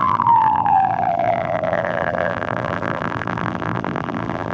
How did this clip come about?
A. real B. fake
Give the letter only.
B